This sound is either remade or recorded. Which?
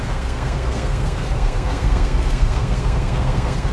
remade